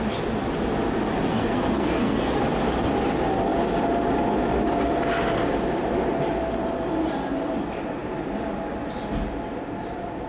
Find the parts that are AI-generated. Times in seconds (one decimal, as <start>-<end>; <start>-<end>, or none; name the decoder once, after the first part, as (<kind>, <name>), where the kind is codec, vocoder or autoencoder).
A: 1.3-2.4 (codec, SNAC)